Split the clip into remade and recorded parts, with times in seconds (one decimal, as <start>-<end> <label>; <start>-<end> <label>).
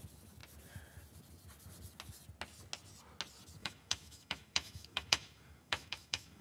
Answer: 0.0-3.6 recorded; 3.6-6.4 remade